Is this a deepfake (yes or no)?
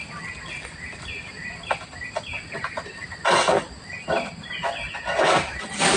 no